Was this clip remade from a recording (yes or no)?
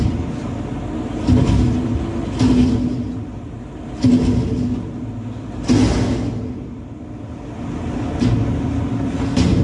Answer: no